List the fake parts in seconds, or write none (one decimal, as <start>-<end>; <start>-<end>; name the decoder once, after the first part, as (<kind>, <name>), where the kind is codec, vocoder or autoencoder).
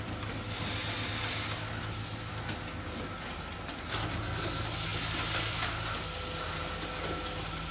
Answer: none